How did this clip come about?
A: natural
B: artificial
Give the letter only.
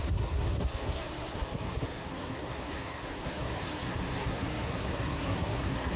B